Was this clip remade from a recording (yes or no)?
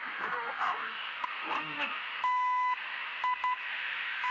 yes